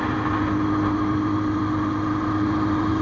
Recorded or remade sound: recorded